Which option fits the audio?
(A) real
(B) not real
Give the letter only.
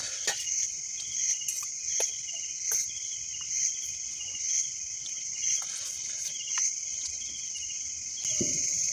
A